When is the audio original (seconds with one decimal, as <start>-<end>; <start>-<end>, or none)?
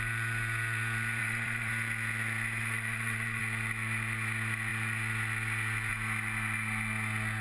0.0-1.2; 1.7-2.6; 3.4-7.4